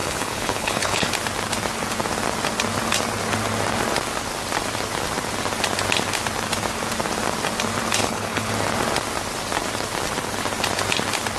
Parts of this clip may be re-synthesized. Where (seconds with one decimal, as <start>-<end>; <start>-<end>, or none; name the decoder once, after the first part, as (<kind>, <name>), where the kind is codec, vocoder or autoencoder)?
0.0-1.1 (codec, HILCodec); 8.0-8.5